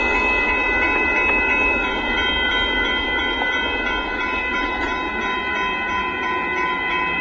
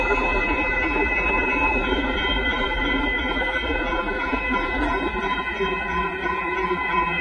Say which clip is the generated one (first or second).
second